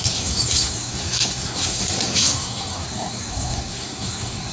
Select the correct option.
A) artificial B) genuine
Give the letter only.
A